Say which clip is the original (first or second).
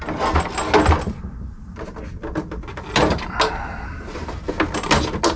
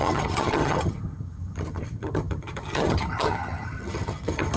first